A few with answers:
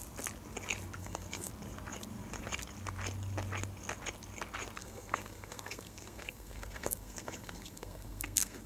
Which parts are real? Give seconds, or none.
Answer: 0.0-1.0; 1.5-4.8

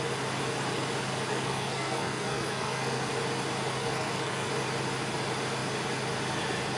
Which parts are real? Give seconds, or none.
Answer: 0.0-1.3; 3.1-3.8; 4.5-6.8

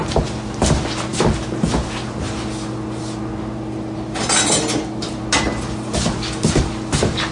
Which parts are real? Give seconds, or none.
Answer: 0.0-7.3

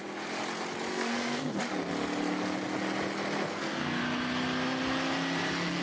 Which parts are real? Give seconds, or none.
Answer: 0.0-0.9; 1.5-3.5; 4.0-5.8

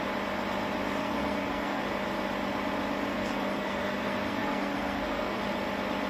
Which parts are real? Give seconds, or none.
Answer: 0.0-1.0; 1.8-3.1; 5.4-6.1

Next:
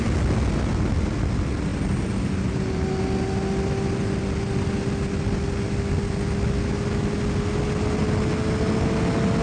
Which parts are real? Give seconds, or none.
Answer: 0.0-9.4

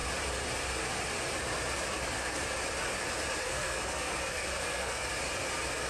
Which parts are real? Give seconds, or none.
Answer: 0.0-3.4; 5.1-5.9